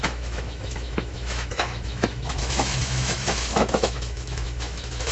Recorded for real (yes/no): no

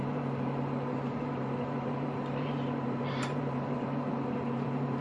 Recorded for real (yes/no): no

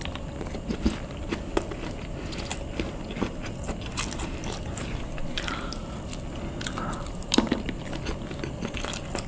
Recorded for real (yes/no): yes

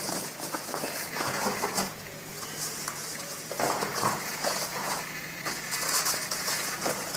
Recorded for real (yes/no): no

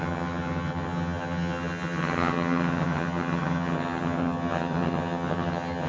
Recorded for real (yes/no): no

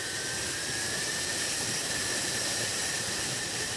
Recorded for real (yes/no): no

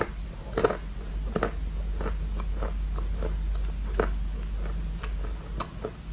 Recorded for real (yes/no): yes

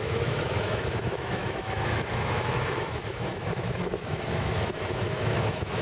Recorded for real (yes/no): no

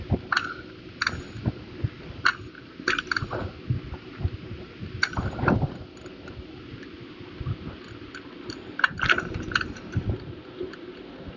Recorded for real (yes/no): yes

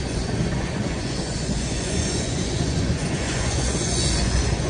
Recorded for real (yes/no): no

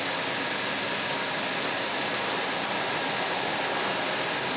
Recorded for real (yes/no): yes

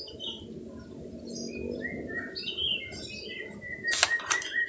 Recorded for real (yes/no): yes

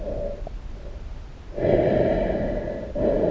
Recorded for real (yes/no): yes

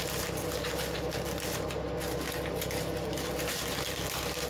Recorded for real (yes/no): yes